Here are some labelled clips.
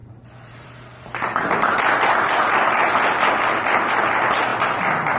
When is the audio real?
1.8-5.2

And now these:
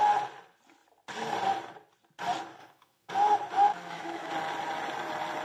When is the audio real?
0.0-2.6; 3.1-3.7; 4.3-5.4

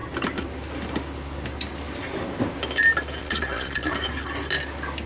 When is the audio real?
0.0-3.2; 3.9-5.1

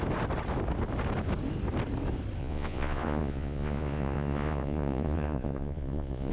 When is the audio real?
0.0-2.4

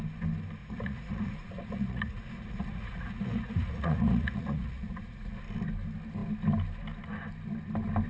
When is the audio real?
0.0-0.6; 5.4-8.1

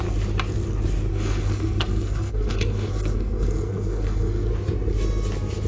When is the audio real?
0.0-1.1; 4.5-5.7